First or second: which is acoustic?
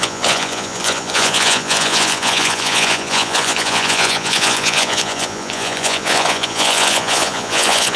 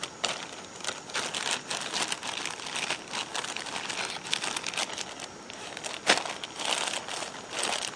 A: second